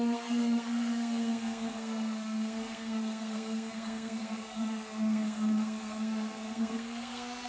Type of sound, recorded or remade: remade